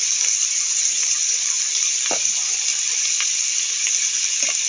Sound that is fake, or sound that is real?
real